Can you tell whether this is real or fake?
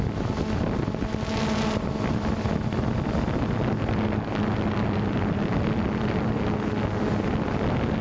real